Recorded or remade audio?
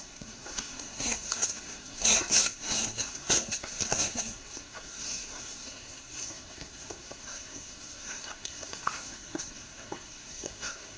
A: remade